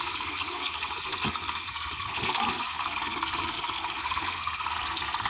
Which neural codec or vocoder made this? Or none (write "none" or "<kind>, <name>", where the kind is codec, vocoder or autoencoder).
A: codec, SNAC